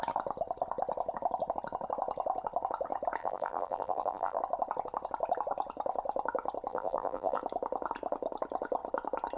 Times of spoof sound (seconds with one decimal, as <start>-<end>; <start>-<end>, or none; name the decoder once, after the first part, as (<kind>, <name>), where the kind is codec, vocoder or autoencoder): 3.2-4.4 (vocoder, BigVGAN v2); 6.7-7.4